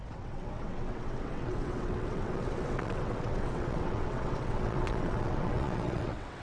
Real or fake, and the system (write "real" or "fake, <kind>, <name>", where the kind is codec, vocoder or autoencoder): fake, vocoder, WaveNeXt